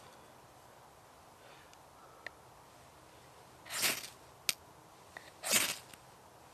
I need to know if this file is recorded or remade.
recorded